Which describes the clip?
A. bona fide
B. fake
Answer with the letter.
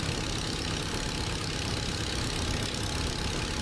A